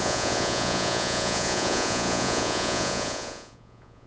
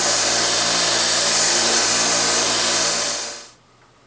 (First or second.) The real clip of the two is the second